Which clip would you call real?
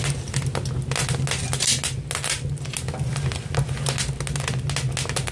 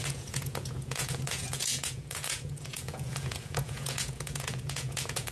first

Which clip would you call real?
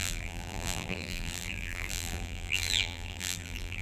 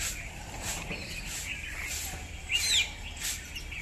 second